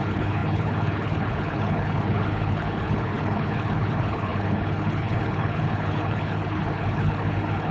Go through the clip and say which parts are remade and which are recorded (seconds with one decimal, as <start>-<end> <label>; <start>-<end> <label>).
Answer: 0.0-7.7 remade